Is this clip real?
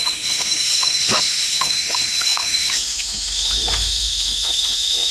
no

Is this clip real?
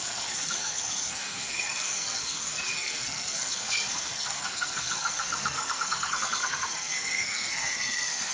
no